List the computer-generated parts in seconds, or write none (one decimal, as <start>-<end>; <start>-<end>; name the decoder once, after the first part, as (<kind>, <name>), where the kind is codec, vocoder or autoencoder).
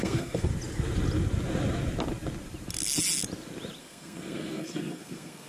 0.0-0.5 (codec, SNAC); 3.8-5.5